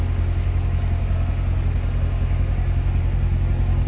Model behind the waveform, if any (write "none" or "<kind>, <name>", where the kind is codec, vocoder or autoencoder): none